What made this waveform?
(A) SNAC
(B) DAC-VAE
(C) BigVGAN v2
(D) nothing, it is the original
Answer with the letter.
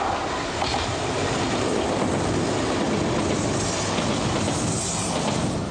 D